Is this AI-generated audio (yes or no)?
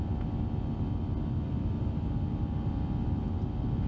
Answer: no